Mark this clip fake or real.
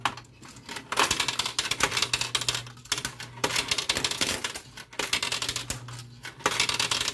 real